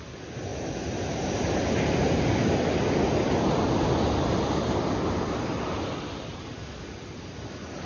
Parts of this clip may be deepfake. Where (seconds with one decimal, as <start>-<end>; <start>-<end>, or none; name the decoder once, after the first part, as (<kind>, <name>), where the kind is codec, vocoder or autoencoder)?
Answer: none